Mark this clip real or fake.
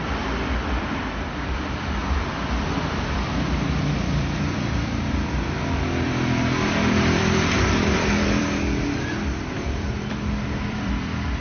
fake